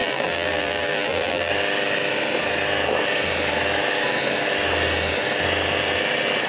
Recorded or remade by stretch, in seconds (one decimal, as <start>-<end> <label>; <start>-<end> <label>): 0.0-1.5 remade; 1.5-6.5 recorded